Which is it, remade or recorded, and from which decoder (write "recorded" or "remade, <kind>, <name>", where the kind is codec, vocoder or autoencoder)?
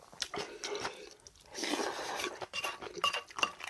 recorded